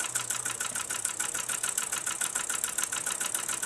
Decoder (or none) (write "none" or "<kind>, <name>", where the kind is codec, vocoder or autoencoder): none